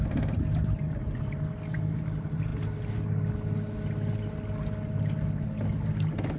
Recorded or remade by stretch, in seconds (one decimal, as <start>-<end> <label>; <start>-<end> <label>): 0.0-6.4 recorded